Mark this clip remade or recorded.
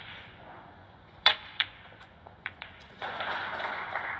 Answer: remade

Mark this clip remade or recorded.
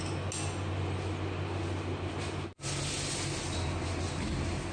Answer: recorded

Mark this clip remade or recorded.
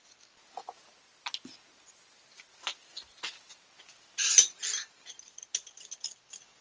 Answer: recorded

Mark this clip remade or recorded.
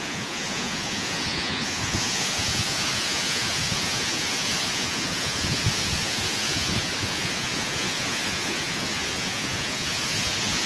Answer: remade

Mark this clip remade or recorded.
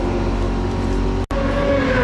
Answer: recorded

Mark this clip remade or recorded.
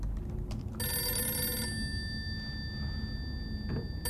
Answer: recorded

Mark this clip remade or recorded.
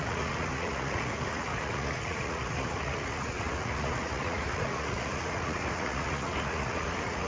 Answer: remade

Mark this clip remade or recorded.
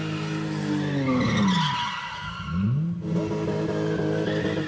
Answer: recorded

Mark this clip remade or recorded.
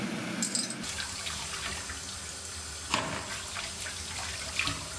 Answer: recorded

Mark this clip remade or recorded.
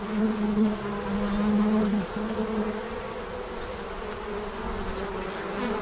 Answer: recorded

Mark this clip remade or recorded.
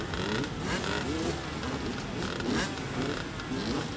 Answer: recorded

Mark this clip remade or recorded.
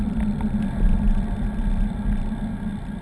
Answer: recorded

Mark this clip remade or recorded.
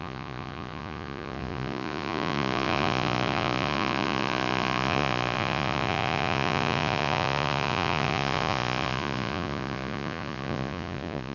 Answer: remade